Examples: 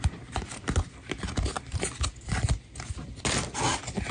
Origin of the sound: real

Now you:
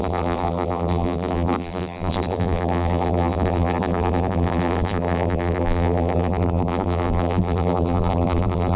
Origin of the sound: fake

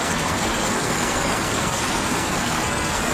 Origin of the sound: fake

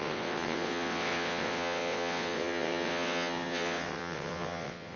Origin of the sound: fake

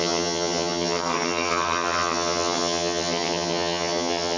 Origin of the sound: fake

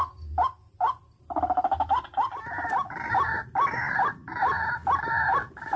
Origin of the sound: real